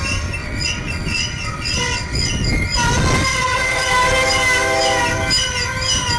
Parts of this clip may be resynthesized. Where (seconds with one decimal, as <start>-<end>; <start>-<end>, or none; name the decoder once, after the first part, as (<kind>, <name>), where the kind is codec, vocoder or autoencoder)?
0.4-2.3 (vocoder, WaveNeXt); 3.3-3.9